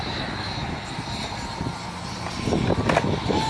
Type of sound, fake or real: real